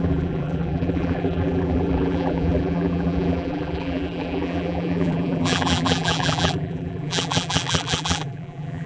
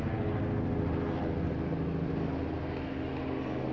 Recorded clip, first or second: second